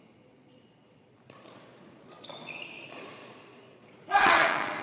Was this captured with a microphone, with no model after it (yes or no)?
no